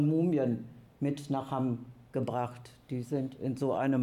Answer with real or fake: real